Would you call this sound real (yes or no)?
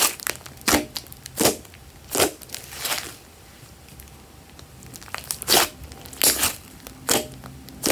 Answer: yes